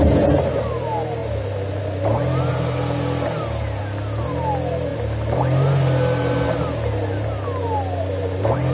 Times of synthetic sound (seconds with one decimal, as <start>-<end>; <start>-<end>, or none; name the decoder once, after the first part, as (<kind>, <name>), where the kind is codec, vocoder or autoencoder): none